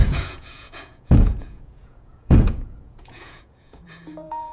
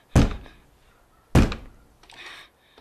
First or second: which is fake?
first